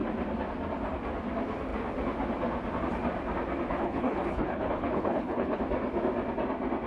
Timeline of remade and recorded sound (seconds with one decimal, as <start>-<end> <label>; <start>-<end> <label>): 0.0-3.7 recorded; 3.7-5.6 remade; 5.6-6.9 recorded